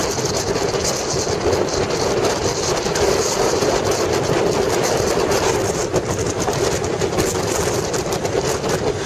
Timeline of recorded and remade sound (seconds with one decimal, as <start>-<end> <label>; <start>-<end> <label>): 0.0-9.1 recorded